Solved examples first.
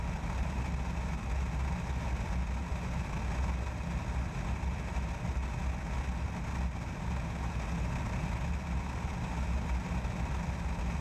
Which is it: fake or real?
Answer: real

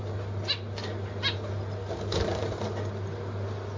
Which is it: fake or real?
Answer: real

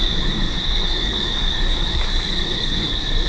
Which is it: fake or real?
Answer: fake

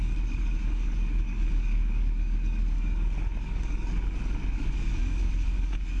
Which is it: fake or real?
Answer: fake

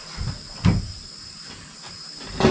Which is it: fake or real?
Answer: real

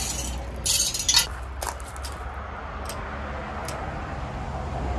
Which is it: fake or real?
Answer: real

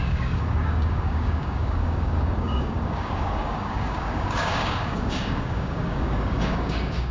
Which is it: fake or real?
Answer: fake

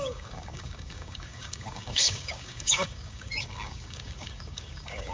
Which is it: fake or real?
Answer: fake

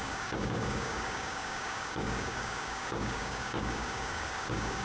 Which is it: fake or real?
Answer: fake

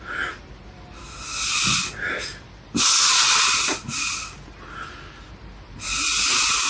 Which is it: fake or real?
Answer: real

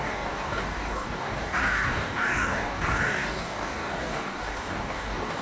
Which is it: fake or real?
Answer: fake